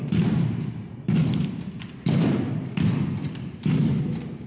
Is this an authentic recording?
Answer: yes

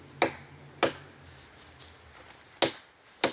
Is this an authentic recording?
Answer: yes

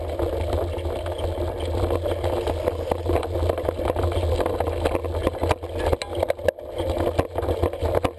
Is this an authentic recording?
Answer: yes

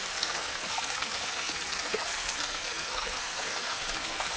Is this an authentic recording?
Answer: no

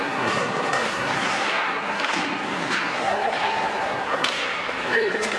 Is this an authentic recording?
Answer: no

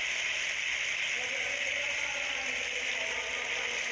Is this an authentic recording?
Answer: yes